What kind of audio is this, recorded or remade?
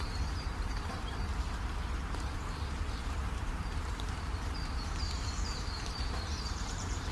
remade